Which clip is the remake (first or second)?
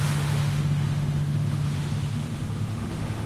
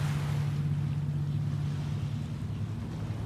first